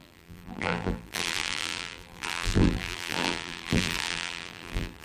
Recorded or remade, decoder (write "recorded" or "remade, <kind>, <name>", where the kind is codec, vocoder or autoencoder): remade, vocoder, BigVGAN v2